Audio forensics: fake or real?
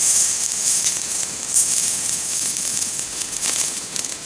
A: fake